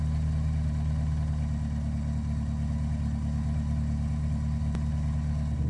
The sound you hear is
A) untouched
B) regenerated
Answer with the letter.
A